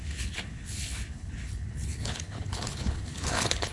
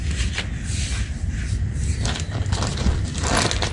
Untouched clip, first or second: second